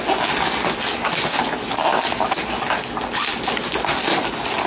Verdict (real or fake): real